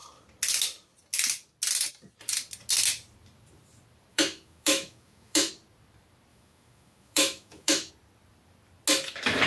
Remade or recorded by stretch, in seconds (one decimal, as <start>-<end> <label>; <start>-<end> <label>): 0.0-4.1 recorded; 4.1-5.5 remade; 5.5-6.3 recorded; 6.3-7.9 remade; 7.9-9.5 recorded